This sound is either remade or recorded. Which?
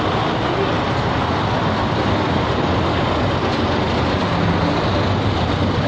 recorded